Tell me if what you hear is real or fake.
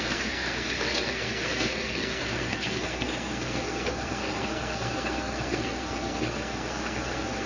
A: fake